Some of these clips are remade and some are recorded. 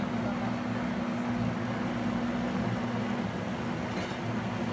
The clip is recorded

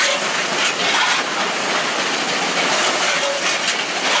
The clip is recorded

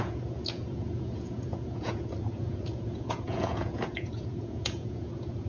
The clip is remade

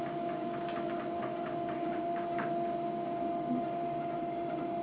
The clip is recorded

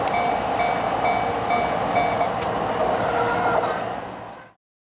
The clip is recorded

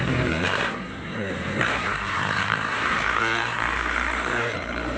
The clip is remade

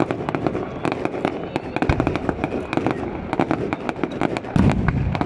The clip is recorded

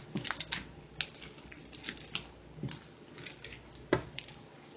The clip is recorded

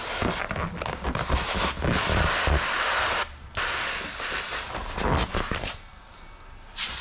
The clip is recorded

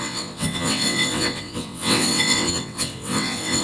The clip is remade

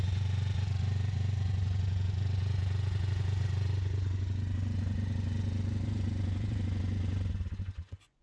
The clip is remade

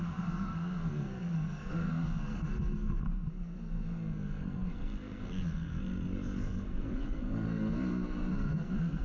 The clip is remade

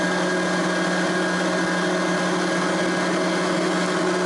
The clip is recorded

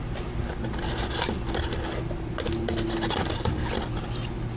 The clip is recorded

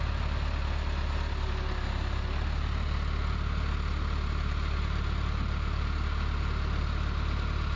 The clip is recorded